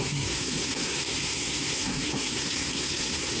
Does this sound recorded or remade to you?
remade